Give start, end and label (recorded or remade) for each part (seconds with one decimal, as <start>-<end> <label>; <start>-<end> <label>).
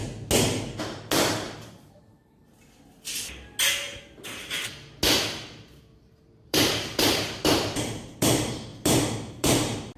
0.0-0.8 recorded; 0.8-2.4 remade; 2.4-6.0 recorded; 6.0-8.7 remade; 8.7-9.3 recorded; 9.3-10.0 remade